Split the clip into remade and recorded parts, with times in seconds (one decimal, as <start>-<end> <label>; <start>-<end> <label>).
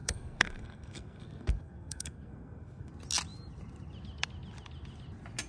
0.0-2.9 remade; 2.9-5.5 recorded